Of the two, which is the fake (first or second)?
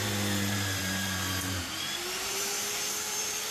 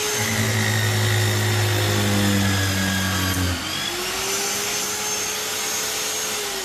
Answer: first